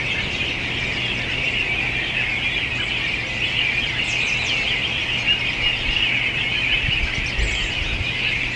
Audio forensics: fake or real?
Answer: real